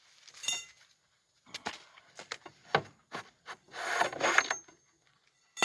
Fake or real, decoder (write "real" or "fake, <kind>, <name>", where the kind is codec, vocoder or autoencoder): real